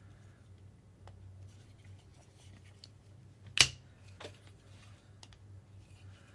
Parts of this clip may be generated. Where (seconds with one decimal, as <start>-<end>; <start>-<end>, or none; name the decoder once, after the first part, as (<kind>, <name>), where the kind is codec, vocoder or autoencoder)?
none

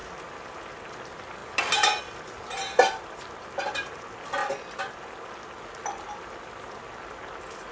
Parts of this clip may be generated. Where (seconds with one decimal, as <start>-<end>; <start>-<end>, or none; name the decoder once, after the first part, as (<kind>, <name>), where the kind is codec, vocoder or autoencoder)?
none